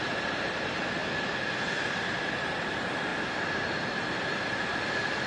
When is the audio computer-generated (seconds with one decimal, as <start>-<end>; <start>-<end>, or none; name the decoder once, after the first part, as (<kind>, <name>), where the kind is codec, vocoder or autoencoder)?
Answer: 0.0-1.0 (vocoder, BigVGAN v2); 1.9-3.1; 3.8-5.3